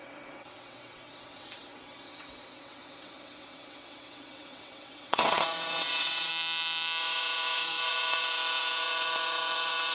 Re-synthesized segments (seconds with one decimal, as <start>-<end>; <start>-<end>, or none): 0.0-6.3; 7.0-9.9